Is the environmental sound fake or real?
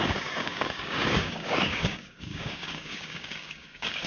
fake